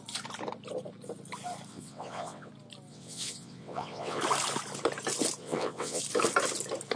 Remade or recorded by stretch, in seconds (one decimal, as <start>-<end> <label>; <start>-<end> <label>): 0.0-1.7 recorded; 1.7-2.5 remade; 2.5-2.9 recorded; 2.9-4.2 remade; 4.2-5.4 recorded; 5.4-6.0 remade; 6.0-7.0 recorded